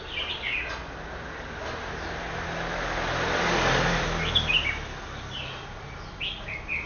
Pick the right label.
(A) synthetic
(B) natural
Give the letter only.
B